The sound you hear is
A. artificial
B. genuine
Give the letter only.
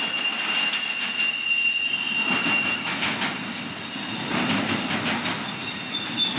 B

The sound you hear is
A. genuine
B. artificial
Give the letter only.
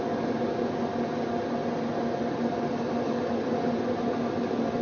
A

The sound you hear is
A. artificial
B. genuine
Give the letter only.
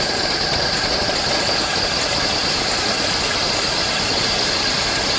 B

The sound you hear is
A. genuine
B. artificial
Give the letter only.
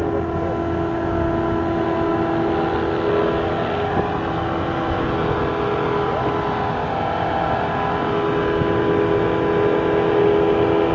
A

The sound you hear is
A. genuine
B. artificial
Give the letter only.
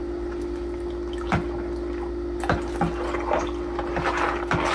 A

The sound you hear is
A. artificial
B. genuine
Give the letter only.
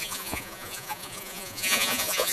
A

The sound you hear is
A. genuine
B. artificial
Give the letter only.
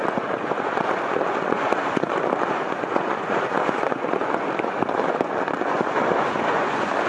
B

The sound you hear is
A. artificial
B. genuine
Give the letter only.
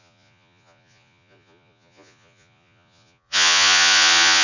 A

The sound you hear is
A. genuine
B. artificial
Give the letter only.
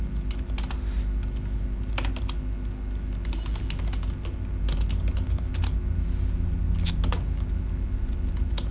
A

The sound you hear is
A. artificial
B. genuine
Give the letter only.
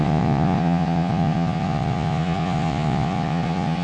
A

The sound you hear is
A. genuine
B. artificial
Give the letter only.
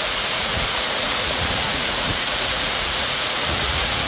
B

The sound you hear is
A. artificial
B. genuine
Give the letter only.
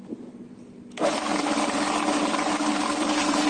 B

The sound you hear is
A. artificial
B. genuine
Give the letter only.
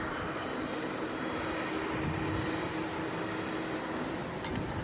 B